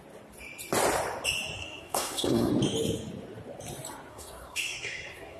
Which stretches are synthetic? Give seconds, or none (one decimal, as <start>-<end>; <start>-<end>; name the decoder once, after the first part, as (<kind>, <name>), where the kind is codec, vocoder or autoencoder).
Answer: 1.6-2.5 (codec, SNAC); 4.1-5.4